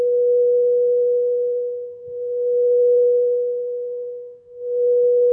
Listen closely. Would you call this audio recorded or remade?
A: remade